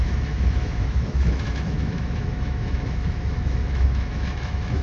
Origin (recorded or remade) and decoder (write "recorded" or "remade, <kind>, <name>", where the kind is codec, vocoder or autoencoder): remade, autoencoder, DAC-VAE